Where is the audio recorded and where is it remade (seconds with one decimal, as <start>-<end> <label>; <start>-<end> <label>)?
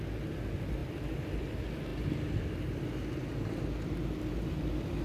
0.0-5.0 recorded